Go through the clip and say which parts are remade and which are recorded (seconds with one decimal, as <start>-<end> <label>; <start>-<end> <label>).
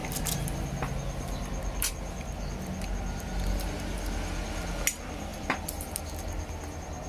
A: 0.0-5.3 recorded; 5.3-5.9 remade; 5.9-7.1 recorded